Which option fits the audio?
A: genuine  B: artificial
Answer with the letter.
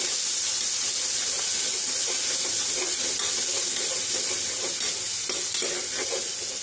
A